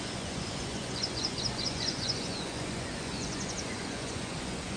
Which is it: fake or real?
fake